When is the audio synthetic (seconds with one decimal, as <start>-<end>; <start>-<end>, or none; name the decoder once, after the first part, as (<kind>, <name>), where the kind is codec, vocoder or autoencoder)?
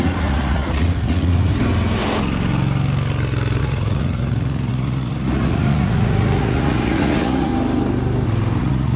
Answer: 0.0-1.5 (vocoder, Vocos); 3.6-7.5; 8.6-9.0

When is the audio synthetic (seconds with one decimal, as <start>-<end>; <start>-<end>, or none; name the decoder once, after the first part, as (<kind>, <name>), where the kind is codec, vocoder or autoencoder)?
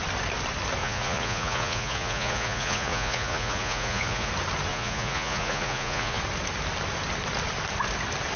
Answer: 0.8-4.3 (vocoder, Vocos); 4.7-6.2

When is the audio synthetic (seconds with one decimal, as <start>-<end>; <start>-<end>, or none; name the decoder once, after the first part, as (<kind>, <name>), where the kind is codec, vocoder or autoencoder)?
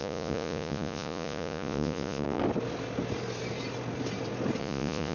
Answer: 0.0-2.4 (vocoder, Vocos); 4.6-5.1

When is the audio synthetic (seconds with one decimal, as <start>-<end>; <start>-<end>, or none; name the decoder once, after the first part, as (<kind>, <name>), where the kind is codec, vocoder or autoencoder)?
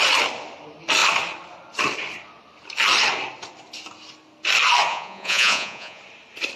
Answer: 4.9-6.0 (vocoder, Vocos)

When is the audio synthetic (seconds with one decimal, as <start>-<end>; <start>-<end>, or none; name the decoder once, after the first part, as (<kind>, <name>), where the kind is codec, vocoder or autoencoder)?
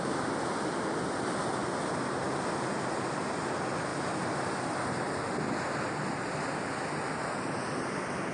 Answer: none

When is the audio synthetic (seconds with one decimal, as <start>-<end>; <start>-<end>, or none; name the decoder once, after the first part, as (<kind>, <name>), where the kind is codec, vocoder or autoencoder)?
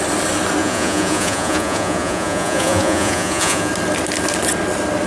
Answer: 0.6-3.7 (vocoder, Vocos)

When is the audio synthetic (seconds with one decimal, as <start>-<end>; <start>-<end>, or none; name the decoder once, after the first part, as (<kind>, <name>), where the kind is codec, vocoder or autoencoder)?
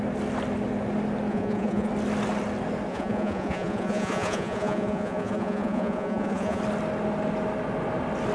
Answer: 1.3-1.9 (vocoder, Vocos); 2.9-6.6